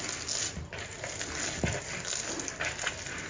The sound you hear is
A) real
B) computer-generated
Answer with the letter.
A